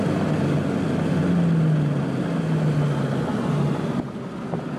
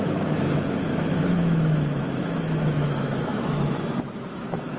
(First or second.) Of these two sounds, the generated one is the second